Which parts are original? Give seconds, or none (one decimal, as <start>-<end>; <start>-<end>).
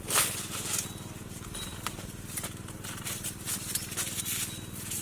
0.0-5.0